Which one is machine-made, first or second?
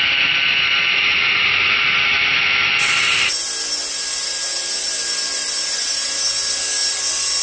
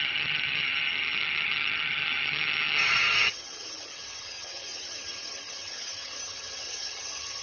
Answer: second